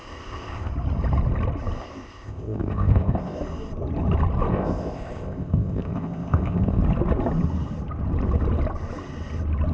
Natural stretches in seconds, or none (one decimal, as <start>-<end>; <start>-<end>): 0.7-1.8; 3.4-4.5; 6.8-9.7

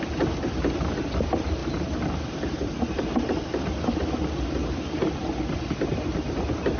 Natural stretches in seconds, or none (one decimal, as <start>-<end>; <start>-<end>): 0.0-6.8

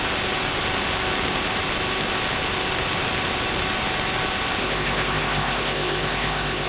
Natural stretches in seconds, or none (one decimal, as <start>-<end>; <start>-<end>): 0.0-4.6

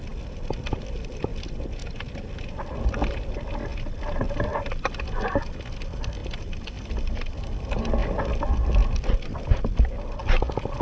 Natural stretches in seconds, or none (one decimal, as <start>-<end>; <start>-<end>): 0.0-10.8

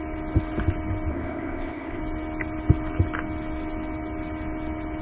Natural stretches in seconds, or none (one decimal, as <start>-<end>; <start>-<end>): 0.0-1.1; 2.0-5.0

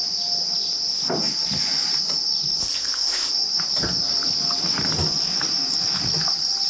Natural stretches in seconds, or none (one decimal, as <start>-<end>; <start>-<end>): 0.0-2.6; 3.3-6.7